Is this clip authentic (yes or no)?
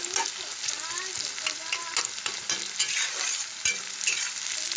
yes